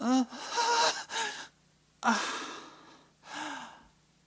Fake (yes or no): no